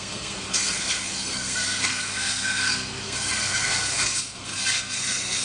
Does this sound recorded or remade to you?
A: remade